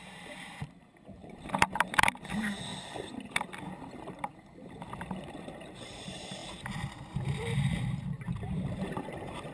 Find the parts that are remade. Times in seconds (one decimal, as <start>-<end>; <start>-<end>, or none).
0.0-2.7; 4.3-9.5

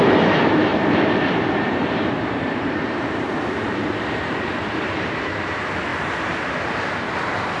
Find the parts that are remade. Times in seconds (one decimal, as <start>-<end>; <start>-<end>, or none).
0.7-5.3

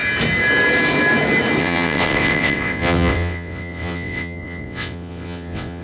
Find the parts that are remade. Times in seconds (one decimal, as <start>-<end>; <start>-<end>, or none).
1.6-5.8

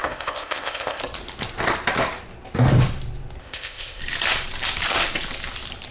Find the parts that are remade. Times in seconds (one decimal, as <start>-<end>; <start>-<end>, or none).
0.0-1.0; 3.4-4.0

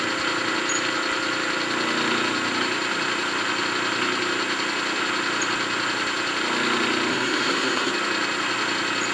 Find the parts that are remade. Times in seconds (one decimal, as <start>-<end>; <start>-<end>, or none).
7.1-7.9